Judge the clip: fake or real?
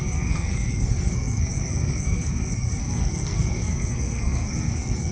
fake